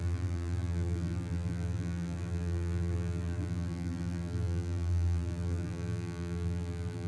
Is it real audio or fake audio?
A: fake